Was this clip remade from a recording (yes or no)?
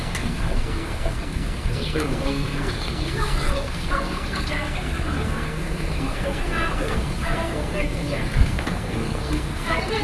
yes